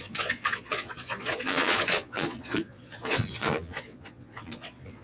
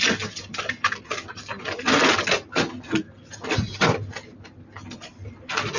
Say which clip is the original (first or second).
second